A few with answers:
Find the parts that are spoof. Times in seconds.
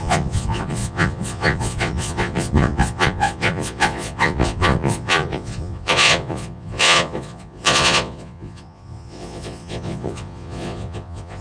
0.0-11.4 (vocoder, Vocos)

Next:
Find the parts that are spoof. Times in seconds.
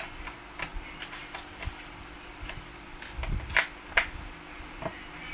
none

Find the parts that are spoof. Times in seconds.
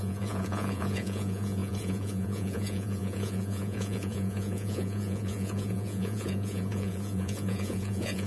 0.0-8.3 (vocoder, Vocos)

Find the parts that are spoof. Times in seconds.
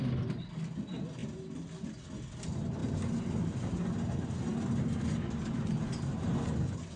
none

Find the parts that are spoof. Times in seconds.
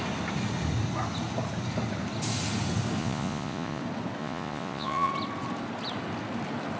3.0-3.8 (vocoder, Vocos); 4.2-5.1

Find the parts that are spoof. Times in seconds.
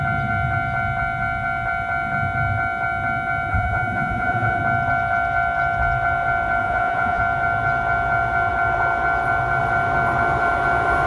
3.5-4.6 (vocoder, Vocos); 6.6-7.2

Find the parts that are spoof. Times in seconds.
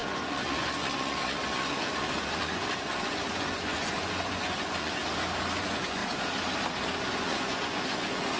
0.0-5.0 (vocoder, Vocos); 5.6-6.0; 7.1-8.4